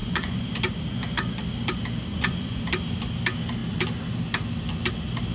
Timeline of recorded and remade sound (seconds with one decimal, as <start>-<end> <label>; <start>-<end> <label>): 0.0-0.5 remade; 0.5-0.9 recorded; 0.9-1.4 remade; 1.4-2.1 recorded; 2.1-2.6 remade; 2.6-5.3 recorded